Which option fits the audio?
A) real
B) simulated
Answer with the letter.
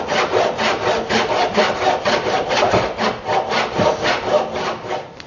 A